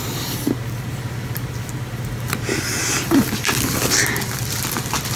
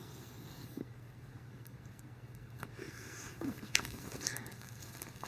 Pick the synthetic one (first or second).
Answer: second